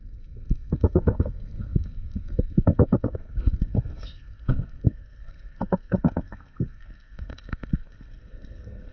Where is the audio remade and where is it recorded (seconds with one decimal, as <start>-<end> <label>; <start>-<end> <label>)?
0.0-8.9 remade